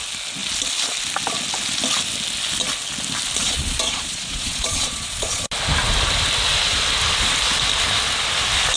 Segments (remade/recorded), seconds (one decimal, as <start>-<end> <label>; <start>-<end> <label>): 0.0-3.4 recorded; 3.4-5.5 remade; 5.5-8.8 recorded